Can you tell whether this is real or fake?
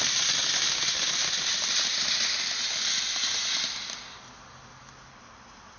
real